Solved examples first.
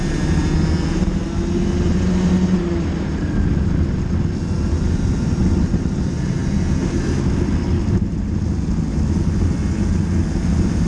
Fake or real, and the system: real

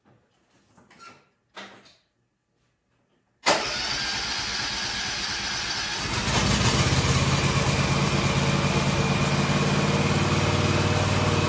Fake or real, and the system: real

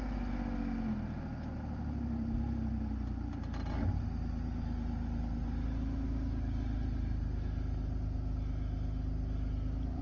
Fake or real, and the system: real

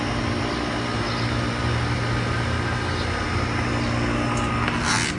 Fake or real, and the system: real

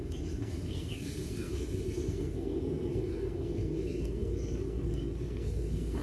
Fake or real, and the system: fake, codec, SNAC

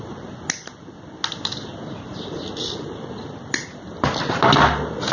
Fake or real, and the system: real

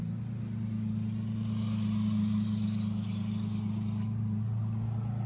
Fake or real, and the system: real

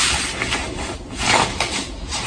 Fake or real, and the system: real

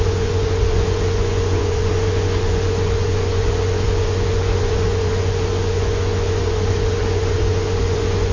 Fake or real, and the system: fake, vocoder, Vocos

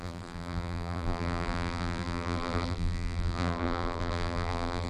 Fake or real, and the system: fake, vocoder, BigVGAN v2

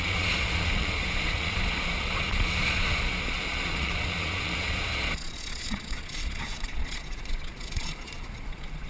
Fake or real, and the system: fake, vocoder, Vocos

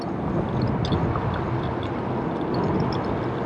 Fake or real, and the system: real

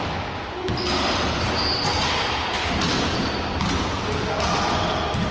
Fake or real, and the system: real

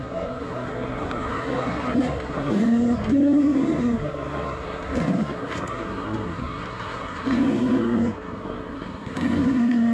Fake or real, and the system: fake, codec, SNAC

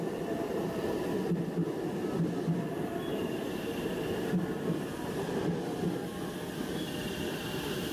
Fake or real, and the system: real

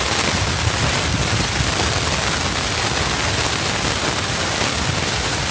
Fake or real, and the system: real